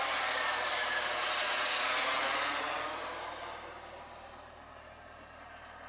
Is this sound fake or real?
real